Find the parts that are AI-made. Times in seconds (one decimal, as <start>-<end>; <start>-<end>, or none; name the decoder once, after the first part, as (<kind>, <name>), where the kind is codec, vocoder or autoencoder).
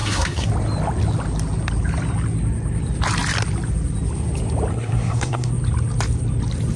0.0-0.5 (codec, SNAC); 4.7-5.5